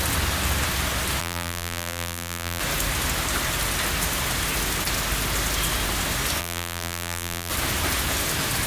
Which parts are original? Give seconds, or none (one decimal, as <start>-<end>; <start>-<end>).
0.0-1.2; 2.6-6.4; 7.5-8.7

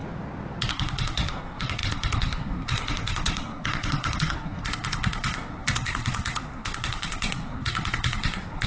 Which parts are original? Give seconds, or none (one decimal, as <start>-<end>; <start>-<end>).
0.0-0.7

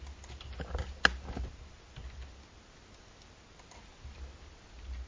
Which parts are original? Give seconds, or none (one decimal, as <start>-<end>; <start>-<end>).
0.0-5.1